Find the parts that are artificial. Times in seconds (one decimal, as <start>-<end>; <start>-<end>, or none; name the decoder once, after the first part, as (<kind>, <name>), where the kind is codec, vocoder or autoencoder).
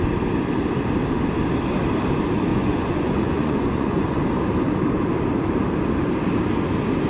2.5-4.2 (vocoder, Vocos)